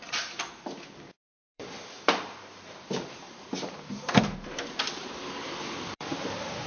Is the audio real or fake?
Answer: fake